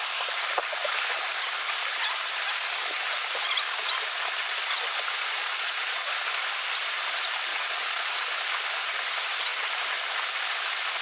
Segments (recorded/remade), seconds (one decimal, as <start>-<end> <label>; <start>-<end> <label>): 0.0-5.4 recorded; 5.4-6.1 remade; 6.1-7.5 recorded; 7.5-8.2 remade; 8.2-11.0 recorded